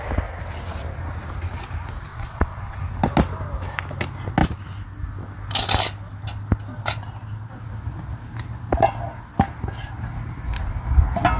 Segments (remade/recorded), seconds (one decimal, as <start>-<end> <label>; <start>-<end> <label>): 0.0-2.1 recorded; 2.1-2.8 remade; 2.8-11.4 recorded